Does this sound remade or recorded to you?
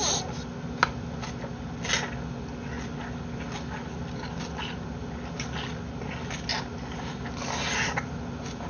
recorded